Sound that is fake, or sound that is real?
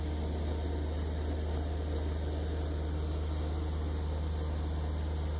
real